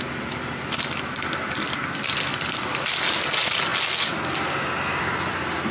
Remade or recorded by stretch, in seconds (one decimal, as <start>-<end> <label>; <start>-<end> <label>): 0.0-3.7 remade; 3.7-5.0 recorded; 5.0-5.7 remade